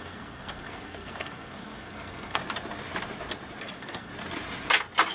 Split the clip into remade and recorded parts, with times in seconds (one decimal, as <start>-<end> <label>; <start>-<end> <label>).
0.0-2.4 remade; 2.4-3.6 recorded; 3.6-4.1 remade; 4.1-5.1 recorded